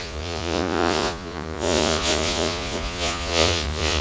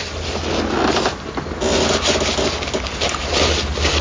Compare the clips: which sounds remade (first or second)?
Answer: first